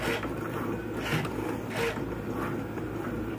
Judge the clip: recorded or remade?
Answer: recorded